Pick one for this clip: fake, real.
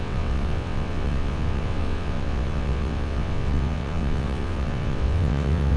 fake